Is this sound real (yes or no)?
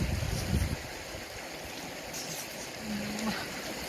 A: yes